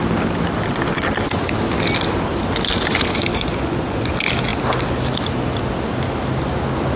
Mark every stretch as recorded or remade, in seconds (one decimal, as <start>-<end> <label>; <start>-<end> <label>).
0.0-3.3 recorded; 3.3-4.1 remade; 4.1-7.0 recorded